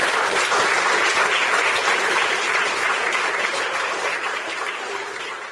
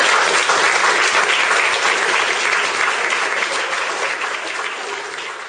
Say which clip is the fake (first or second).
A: first